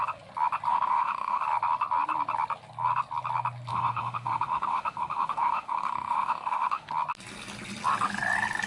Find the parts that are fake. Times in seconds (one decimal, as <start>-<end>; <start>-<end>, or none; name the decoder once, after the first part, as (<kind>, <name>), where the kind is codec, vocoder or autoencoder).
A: 0.7-1.4 (autoencoder, DAC-VAE); 3.7-6.9

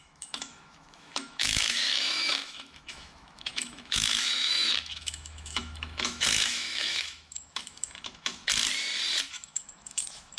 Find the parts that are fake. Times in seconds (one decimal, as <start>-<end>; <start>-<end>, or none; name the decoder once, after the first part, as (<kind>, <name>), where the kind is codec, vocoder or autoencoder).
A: 0.0-8.4 (autoencoder, DAC-VAE); 9.3-10.4

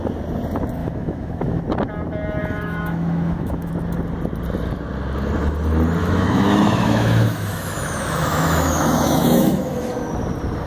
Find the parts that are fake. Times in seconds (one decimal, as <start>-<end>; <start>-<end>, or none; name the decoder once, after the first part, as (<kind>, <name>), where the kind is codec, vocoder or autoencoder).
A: 0.8-1.6 (autoencoder, DAC-VAE); 2.4-3.7; 6.0-9.9

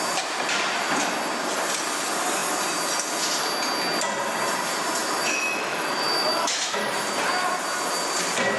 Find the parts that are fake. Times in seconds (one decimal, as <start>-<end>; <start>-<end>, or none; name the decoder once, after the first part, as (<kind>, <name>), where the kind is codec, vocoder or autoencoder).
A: 5.0-6.8 (autoencoder, DAC-VAE)

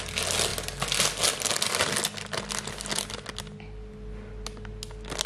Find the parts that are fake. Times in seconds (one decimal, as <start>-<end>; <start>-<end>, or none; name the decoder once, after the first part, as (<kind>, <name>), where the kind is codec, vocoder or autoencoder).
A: none

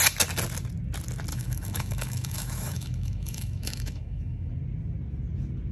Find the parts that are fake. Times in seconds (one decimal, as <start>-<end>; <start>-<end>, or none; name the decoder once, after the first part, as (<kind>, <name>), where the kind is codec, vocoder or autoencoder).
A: 1.3-4.5 (autoencoder, DAC-VAE)

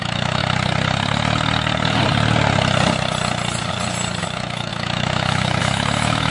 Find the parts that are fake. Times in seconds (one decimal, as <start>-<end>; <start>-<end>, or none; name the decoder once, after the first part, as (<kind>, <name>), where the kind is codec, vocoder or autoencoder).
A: 0.0-0.4 (autoencoder, DAC-VAE); 4.2-6.3